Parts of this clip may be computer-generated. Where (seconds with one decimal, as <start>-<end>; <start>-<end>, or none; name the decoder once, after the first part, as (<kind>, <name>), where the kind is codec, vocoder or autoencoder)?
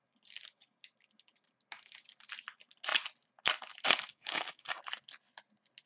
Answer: 4.1-4.8 (codec, DAC)